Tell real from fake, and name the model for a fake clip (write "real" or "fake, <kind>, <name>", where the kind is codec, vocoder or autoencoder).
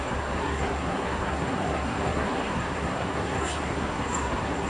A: fake, codec, SNAC